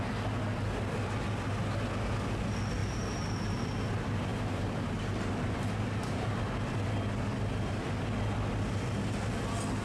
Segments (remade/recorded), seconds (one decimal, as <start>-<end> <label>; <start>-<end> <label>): 0.0-2.8 recorded; 2.8-3.9 remade; 3.9-4.3 recorded; 4.3-6.4 remade; 6.4-9.8 recorded